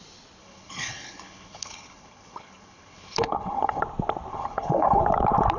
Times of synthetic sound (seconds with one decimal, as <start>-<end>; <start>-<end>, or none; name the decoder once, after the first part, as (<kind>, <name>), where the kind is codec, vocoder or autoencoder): 0.4-3.8 (codec, HILCodec); 4.3-5.0